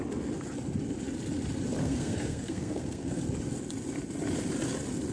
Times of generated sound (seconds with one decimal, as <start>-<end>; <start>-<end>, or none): 1.8-3.2